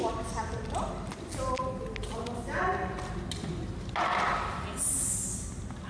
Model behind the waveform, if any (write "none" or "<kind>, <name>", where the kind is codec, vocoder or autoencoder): none